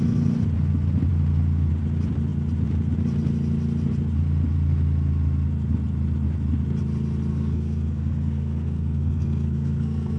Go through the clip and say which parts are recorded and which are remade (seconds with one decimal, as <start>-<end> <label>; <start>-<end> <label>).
0.0-7.3 recorded; 7.3-10.2 remade